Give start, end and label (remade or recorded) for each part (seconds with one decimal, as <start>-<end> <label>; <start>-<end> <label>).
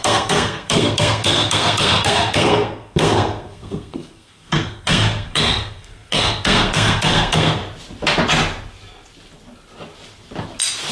0.0-7.6 remade; 7.6-10.9 recorded